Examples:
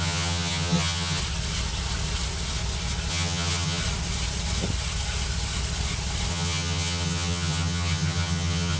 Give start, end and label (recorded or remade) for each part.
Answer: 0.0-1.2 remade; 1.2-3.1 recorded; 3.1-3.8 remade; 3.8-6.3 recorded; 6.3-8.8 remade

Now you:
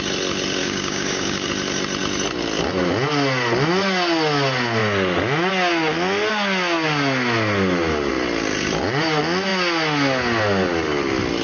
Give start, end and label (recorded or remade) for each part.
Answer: 0.0-0.6 recorded; 0.6-1.5 remade; 1.5-11.4 recorded

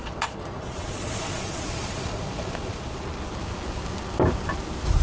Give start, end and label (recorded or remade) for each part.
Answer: 0.0-3.0 remade; 3.0-5.0 recorded